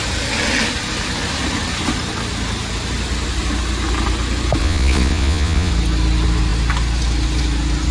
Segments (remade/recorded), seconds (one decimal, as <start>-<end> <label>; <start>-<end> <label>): 0.0-4.6 recorded; 4.6-5.7 remade; 5.7-7.9 recorded